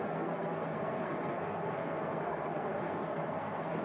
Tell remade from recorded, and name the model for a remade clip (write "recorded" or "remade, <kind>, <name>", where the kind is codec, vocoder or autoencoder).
remade, codec, SNAC